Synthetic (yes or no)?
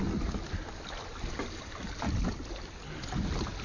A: no